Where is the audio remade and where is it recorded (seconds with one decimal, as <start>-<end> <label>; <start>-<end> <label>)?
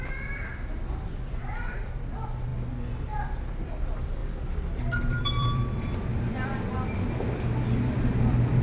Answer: 0.0-2.5 remade; 2.5-3.5 recorded; 3.5-4.2 remade; 4.2-4.8 recorded; 4.8-6.1 remade; 6.1-8.2 recorded; 8.2-8.6 remade